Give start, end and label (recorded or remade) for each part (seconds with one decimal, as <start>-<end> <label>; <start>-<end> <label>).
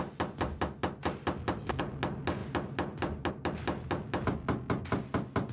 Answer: 0.0-5.5 recorded